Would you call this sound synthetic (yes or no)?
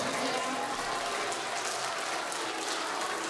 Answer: no